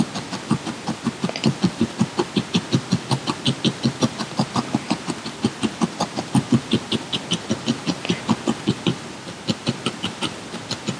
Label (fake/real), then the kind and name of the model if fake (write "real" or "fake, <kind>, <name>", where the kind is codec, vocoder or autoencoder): real